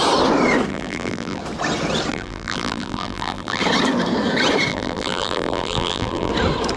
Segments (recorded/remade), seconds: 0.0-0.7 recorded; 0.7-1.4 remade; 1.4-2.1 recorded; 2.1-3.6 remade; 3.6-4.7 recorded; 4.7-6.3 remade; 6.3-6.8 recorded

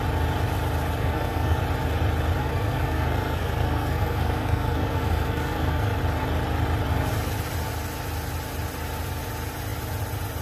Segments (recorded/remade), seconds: 0.0-1.0 recorded; 1.0-1.6 remade; 1.6-2.4 recorded; 2.4-6.0 remade; 6.0-10.4 recorded

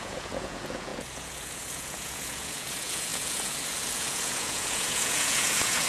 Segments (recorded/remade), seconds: 0.0-5.9 remade